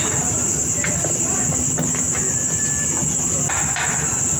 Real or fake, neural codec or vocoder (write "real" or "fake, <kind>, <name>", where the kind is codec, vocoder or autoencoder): real